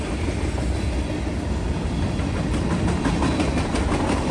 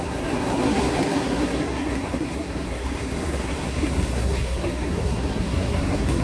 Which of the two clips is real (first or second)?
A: first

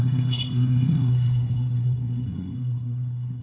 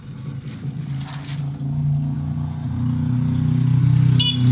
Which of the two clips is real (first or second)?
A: second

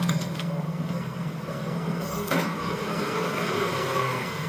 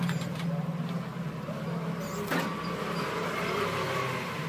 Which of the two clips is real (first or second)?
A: second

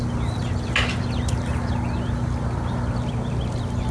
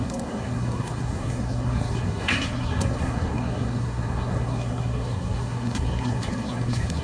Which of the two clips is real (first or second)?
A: first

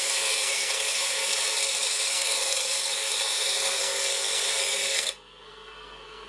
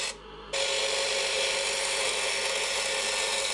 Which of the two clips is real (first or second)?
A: second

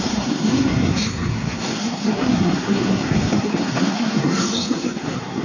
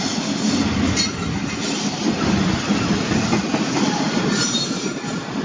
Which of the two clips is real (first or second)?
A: second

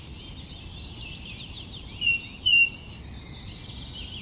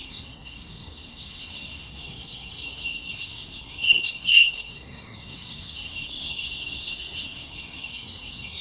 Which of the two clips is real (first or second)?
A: first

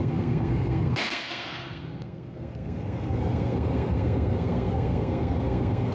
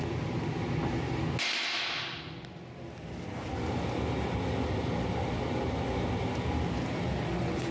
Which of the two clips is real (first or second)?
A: second